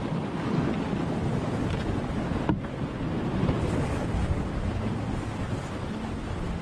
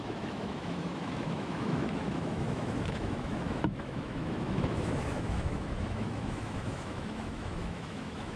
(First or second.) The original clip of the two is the first